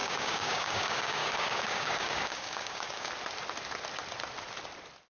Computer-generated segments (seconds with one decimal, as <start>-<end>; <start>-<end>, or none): 0.0-3.1